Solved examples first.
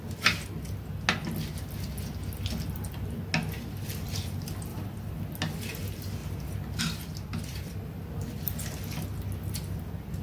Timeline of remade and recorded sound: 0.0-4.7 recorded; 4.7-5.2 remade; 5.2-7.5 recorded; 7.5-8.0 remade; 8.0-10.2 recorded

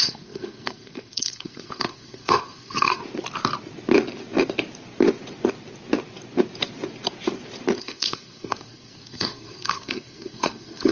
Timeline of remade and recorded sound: 0.0-3.0 remade; 3.0-7.8 recorded; 7.8-10.9 remade

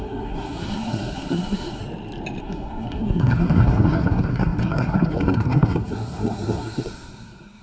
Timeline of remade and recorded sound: 0.0-1.8 remade; 1.8-2.4 recorded; 2.4-7.6 remade

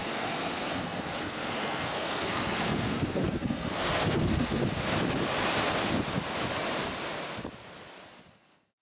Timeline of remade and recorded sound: 0.0-4.6 remade; 4.6-8.3 recorded; 8.3-8.8 remade

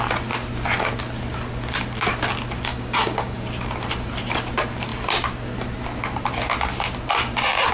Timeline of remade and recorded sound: 0.0-2.7 recorded; 2.7-3.4 remade; 3.4-7.7 recorded

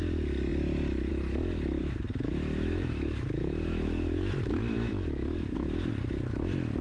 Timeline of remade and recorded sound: 0.0-1.8 recorded; 1.8-5.9 remade; 5.9-6.8 recorded

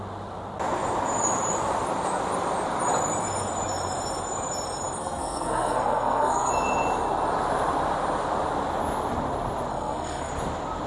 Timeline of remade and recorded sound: 0.0-5.0 recorded; 5.0-6.5 remade; 6.5-9.7 recorded; 9.7-10.3 remade; 10.3-10.9 recorded